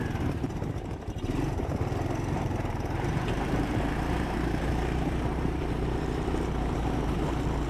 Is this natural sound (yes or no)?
no